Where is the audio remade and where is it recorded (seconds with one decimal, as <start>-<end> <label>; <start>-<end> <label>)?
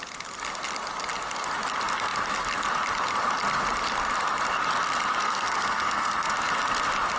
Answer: 0.0-5.2 recorded; 5.2-6.3 remade; 6.3-7.2 recorded